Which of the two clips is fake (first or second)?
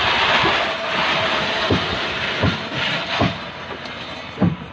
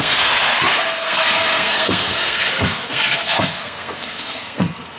second